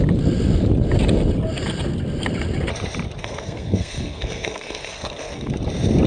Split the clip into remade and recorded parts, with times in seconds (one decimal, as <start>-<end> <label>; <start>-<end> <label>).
0.0-3.2 recorded; 3.2-5.5 remade; 5.5-6.1 recorded